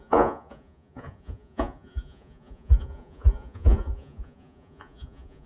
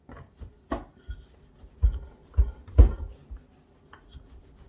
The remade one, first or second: first